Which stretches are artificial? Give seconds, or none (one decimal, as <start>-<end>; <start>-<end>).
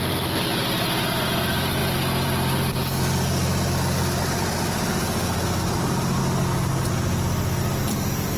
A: none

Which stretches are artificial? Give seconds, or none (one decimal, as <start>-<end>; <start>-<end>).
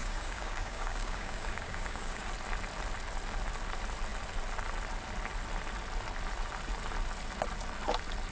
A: 0.0-2.3